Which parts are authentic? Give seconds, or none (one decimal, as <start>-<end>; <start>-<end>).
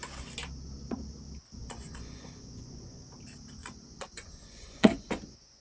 0.0-1.6; 3.1-3.6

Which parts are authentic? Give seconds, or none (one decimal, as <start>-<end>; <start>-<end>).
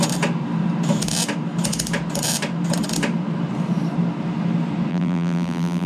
0.0-4.9